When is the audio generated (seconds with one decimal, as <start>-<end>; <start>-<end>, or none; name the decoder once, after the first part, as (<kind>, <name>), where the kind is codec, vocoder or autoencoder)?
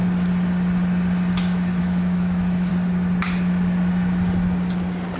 1.8-2.7 (autoencoder, DAC-VAE)